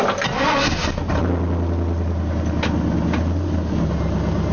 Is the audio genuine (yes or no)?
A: yes